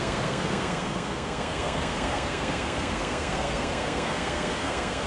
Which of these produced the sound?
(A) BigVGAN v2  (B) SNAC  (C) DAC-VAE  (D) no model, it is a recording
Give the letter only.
B